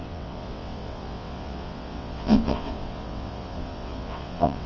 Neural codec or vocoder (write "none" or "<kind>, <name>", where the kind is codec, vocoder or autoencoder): vocoder, WaveNeXt